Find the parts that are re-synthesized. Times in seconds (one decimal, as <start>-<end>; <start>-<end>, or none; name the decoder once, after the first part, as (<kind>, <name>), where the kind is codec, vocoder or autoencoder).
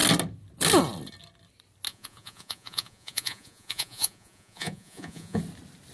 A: 1.9-5.4 (vocoder, Vocos)